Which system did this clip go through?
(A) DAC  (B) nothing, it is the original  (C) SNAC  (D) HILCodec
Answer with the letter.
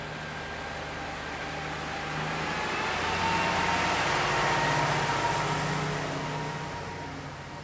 B